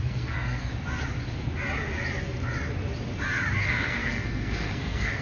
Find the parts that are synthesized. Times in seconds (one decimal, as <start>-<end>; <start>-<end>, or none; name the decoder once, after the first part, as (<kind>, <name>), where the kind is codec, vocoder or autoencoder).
0.0-0.7 (codec, SNAC); 3.6-5.2